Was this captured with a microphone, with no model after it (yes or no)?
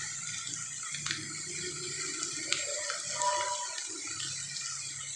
yes